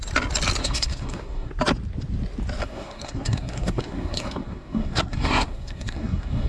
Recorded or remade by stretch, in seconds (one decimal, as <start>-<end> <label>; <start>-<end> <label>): 0.0-0.6 recorded; 0.6-1.5 remade; 1.5-2.6 recorded; 2.6-6.5 remade